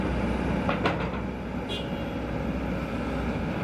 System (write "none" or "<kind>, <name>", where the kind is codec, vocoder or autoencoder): none